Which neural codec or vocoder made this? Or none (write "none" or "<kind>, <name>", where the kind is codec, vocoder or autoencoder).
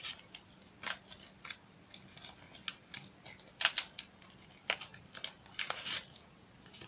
none